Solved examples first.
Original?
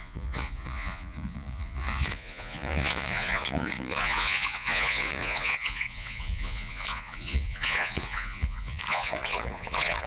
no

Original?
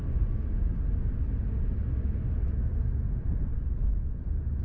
yes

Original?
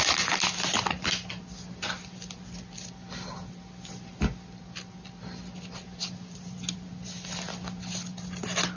yes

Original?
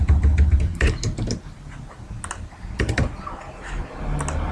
yes